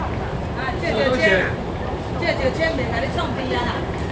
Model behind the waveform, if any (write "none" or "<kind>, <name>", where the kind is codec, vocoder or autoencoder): vocoder, BigVGAN v2